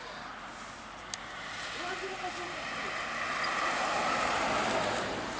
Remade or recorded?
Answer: recorded